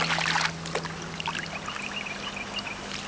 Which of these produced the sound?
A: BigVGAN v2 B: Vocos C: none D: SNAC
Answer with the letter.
C